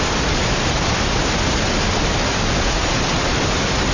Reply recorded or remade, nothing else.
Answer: recorded